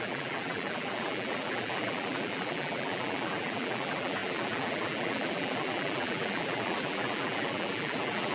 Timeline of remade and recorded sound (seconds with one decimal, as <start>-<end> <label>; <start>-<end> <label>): 0.0-8.3 remade

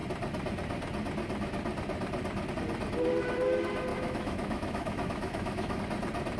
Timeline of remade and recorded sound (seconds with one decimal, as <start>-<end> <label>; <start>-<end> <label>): 0.0-3.9 recorded; 3.9-5.8 remade; 5.8-6.4 recorded